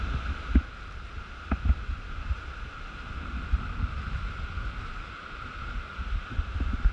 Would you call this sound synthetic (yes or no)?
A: no